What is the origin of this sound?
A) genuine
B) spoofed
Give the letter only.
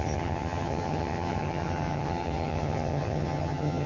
B